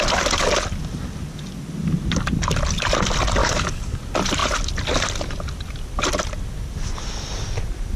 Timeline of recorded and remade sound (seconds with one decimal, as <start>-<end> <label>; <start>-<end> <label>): 0.0-3.4 recorded; 3.4-4.0 remade; 4.0-8.0 recorded